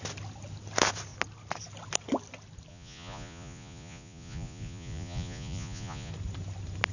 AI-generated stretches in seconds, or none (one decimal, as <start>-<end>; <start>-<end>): 2.7-6.1